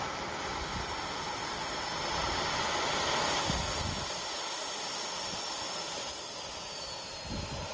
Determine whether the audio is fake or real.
fake